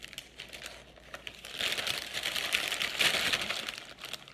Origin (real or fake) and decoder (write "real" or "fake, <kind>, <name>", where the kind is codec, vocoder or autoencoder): real